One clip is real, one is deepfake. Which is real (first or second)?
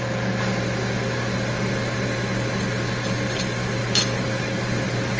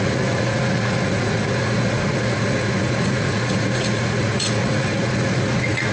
first